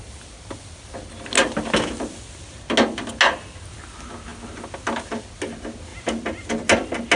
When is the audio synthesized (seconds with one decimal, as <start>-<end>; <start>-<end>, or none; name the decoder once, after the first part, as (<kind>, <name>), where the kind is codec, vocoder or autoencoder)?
none